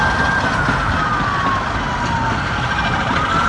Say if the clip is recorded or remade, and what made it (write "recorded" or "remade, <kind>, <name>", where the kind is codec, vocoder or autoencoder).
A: recorded